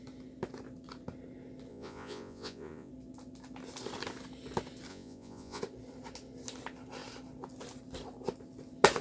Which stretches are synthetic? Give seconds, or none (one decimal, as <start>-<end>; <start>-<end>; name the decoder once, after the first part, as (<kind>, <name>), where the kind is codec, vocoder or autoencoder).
1.7-2.9 (vocoder, Vocos); 4.9-5.6